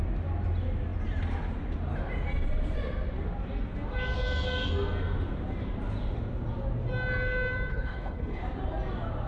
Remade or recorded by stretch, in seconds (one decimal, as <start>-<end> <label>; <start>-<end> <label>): 0.0-7.7 recorded; 7.7-8.4 remade; 8.4-9.3 recorded